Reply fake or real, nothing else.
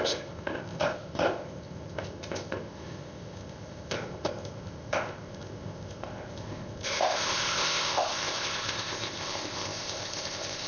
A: fake